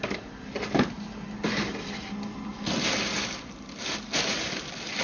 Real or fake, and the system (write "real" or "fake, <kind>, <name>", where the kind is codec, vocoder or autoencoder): real